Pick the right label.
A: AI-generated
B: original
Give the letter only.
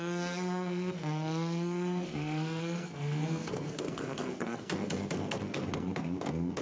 A